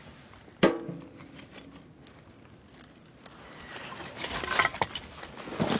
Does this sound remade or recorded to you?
recorded